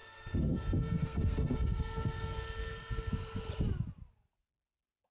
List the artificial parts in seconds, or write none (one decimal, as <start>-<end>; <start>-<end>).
0.0-3.1